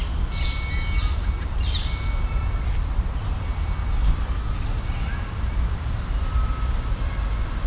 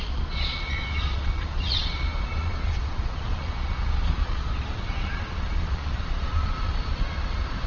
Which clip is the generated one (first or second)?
second